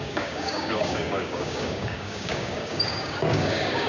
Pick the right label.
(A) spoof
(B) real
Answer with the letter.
A